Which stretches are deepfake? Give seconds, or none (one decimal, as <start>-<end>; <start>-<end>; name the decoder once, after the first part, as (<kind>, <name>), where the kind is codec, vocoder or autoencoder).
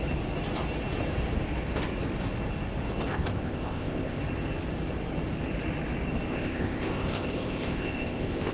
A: 3.1-4.2 (codec, ZipCodec); 6.3-8.5